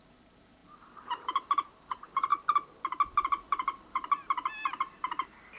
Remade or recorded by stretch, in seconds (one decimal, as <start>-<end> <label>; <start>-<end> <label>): 0.0-2.3 remade; 2.3-3.5 recorded; 3.5-5.6 remade

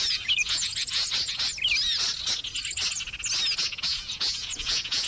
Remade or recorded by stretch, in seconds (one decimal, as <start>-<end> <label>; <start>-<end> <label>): 0.0-1.0 remade; 1.0-3.7 recorded; 3.7-5.1 remade

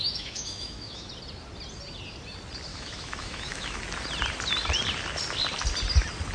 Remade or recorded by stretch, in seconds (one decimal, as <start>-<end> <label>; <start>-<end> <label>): 0.0-1.1 remade; 1.1-2.7 recorded; 2.7-3.8 remade; 3.8-6.3 recorded